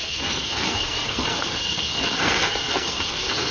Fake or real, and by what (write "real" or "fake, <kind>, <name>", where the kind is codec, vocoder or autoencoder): fake, codec, SNAC